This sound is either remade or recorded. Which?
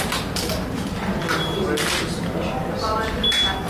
recorded